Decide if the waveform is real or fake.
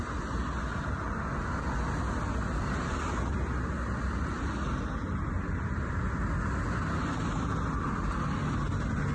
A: real